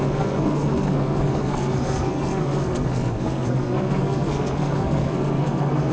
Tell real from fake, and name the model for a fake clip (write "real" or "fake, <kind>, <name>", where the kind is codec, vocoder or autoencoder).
fake, codec, SNAC